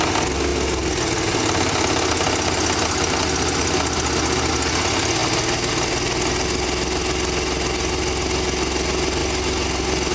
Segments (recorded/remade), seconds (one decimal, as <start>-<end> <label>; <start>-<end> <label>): 0.0-10.1 recorded